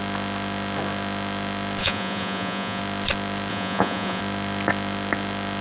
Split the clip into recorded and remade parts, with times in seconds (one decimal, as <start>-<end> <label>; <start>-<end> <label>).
0.0-1.8 recorded; 1.8-2.8 remade; 2.8-3.5 recorded; 3.5-4.2 remade; 4.2-5.6 recorded